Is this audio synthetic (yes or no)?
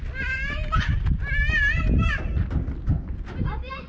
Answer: no